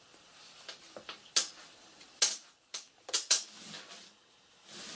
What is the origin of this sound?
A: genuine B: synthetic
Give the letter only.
A